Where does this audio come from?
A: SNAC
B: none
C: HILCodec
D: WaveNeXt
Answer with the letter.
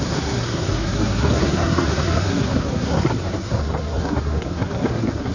A